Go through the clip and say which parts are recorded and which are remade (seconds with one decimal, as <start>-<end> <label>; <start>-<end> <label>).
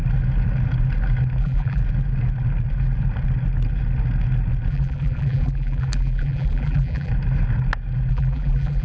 0.0-1.4 recorded; 1.4-1.8 remade; 1.8-4.7 recorded; 4.7-7.1 remade; 7.1-8.1 recorded; 8.1-8.8 remade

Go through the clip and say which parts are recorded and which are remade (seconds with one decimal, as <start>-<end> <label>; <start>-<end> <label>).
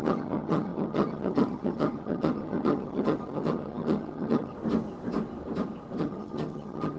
0.0-4.5 remade; 4.5-6.0 recorded; 6.0-7.0 remade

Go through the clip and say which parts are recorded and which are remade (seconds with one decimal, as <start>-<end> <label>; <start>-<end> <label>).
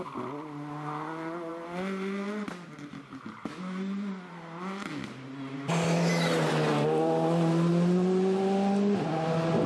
0.0-9.7 recorded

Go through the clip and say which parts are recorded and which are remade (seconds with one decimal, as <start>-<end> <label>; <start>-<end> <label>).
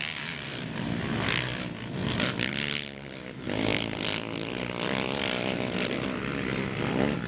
0.0-7.3 recorded